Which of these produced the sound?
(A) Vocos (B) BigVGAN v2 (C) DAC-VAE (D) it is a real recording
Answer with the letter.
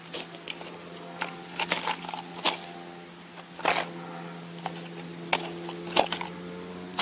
D